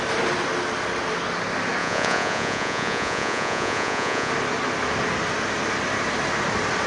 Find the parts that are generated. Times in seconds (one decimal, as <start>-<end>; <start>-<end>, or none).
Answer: 1.8-4.3